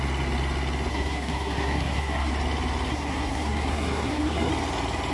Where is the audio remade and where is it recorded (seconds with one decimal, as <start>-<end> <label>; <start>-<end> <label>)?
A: 0.0-0.9 recorded; 0.9-2.3 remade; 2.3-2.9 recorded; 2.9-4.5 remade; 4.5-5.1 recorded